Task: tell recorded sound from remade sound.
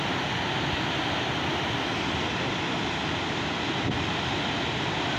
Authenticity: recorded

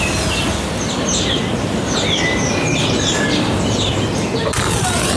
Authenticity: recorded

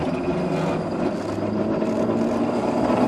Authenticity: recorded